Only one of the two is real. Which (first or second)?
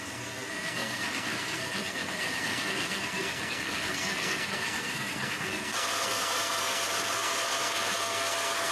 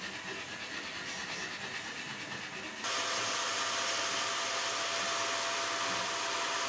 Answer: second